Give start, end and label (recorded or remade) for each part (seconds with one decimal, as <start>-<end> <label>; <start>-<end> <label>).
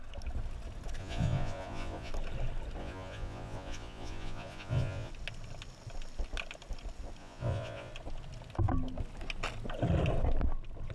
0.0-1.0 recorded; 1.0-2.1 remade; 2.1-2.8 recorded; 2.8-5.1 remade; 5.1-7.2 recorded; 7.2-7.9 remade; 7.9-10.9 recorded